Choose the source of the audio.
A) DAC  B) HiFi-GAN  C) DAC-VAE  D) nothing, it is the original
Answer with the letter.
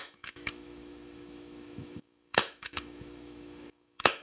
C